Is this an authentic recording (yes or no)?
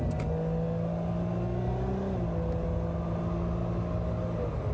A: yes